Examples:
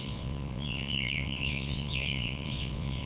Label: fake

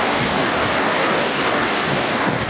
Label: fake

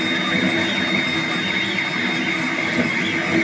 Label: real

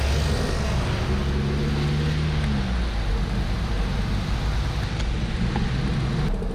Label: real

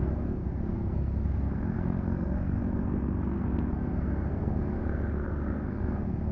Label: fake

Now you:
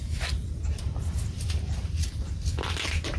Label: fake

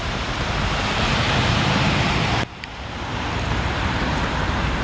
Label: fake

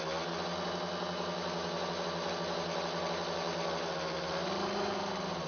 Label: real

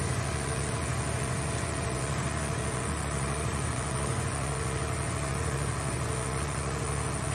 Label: fake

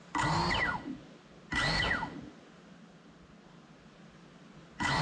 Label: real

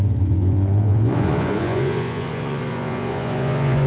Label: fake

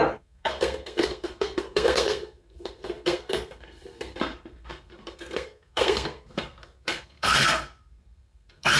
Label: fake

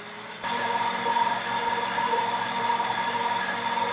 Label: real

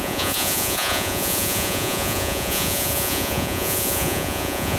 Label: fake